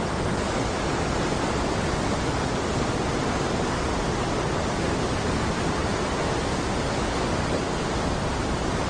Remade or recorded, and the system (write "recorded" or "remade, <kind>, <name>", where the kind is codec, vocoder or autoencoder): recorded